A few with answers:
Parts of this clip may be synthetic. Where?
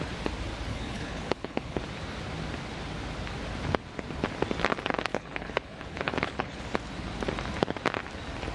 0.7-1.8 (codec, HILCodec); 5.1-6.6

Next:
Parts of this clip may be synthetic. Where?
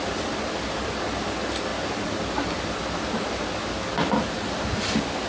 none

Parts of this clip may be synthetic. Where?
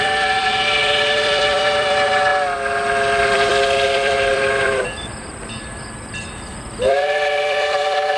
0.0-2.3 (vocoder, BigVGAN v2); 3.2-8.2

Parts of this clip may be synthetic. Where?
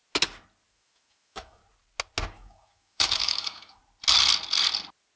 0.7-1.6 (autoencoder, DAC-VAE); 2.3-3.8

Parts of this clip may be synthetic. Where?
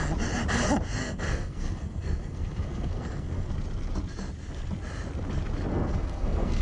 1.0-3.5 (codec, SNAC); 5.7-6.6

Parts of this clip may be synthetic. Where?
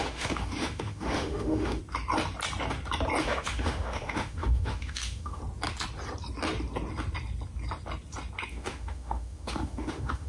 0.0-1.8 (autoencoder, DAC-VAE); 3.2-5.4; 8.5-10.3